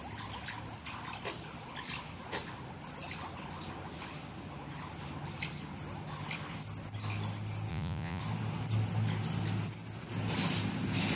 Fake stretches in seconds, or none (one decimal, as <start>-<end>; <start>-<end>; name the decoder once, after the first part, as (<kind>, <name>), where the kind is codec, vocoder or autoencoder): 7.7-8.2 (vocoder, Vocos)